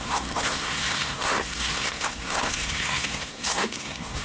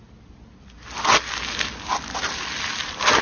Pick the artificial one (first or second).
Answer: first